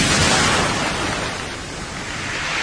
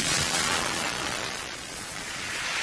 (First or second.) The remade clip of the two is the second